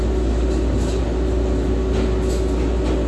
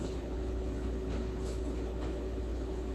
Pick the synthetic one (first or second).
second